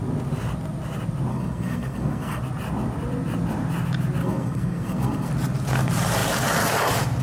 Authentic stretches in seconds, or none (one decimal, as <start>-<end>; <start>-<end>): 0.0-1.3; 2.4-4.2; 5.3-7.2